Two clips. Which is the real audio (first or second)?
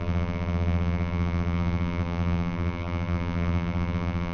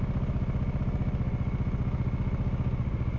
second